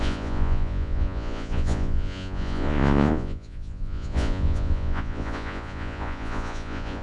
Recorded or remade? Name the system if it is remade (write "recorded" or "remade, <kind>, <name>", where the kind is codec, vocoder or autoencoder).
remade, vocoder, Vocos